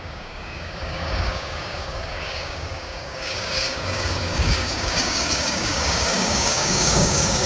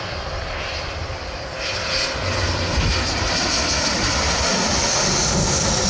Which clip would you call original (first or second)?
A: second